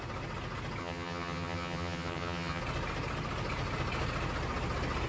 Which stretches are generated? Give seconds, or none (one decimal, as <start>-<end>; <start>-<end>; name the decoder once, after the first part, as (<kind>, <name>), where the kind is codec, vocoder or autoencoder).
0.8-2.6 (vocoder, HiFi-GAN)